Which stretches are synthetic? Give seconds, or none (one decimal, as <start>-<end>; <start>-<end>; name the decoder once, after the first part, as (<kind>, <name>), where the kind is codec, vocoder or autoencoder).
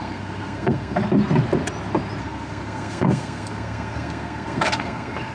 0.0-1.0 (codec, SNAC); 2.2-5.3